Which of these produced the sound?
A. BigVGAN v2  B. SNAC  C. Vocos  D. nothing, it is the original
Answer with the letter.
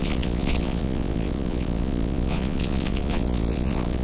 C